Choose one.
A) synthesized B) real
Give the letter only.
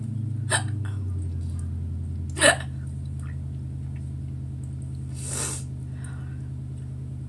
B